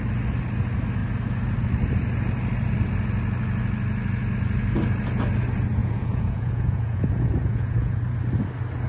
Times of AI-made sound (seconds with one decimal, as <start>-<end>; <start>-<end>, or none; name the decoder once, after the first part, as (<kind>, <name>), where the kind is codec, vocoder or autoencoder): 5.8-8.0 (vocoder, Vocos)